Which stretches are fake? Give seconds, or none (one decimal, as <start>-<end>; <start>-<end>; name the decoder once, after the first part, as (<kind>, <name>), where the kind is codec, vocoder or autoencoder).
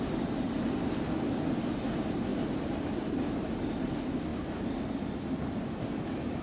2.3-3.4 (vocoder, BigVGAN v2)